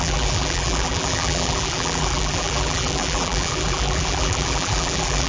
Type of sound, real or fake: fake